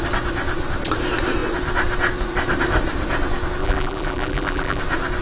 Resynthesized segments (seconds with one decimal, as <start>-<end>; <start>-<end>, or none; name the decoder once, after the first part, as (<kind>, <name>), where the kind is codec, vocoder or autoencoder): 3.6-4.8 (vocoder, BigVGAN v2)